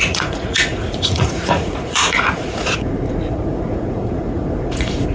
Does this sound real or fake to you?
fake